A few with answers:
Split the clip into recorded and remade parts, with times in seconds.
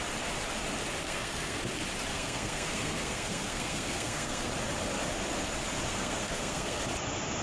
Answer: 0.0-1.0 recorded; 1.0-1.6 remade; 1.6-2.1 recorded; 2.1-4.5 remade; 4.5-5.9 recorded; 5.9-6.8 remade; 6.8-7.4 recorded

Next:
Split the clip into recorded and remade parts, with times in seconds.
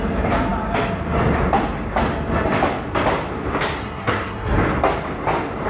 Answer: 0.0-3.8 recorded; 3.8-4.6 remade; 4.6-5.7 recorded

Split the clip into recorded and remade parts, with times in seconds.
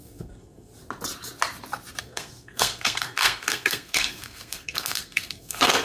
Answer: 0.0-0.7 remade; 0.7-2.0 recorded; 2.0-5.8 remade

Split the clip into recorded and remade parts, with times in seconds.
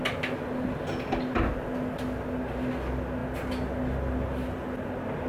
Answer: 0.0-5.3 recorded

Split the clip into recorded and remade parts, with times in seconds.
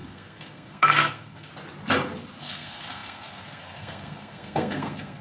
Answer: 0.0-1.5 remade; 1.5-2.4 recorded; 2.4-5.2 remade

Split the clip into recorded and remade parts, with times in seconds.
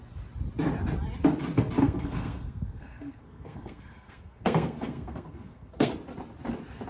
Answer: 0.0-1.8 recorded; 1.8-5.9 remade; 5.9-6.9 recorded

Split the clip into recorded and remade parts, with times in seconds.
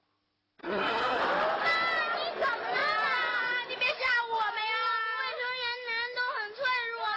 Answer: 0.0-0.6 recorded; 0.6-1.2 remade; 1.2-7.2 recorded